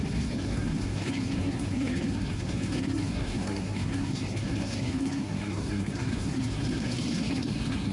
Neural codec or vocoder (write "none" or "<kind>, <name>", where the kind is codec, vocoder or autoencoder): codec, SNAC